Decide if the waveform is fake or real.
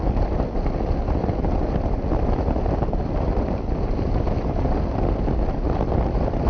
fake